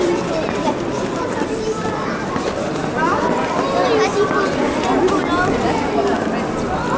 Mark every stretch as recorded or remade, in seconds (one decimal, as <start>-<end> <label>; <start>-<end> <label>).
0.0-7.0 recorded